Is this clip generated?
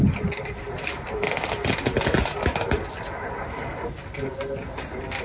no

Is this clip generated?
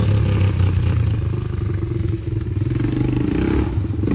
no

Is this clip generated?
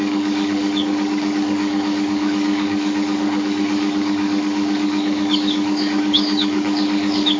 yes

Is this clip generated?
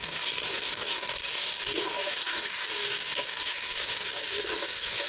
yes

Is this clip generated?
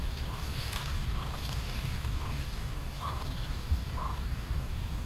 yes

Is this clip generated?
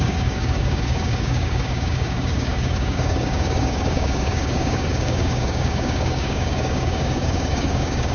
yes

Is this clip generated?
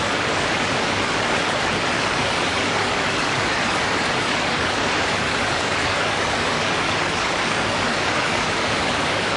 yes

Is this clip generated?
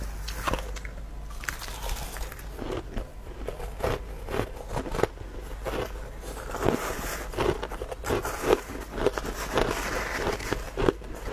no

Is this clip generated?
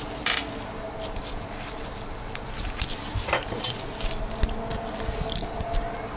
no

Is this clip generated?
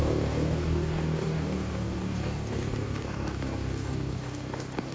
yes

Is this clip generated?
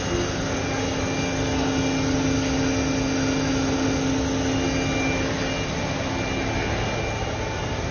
no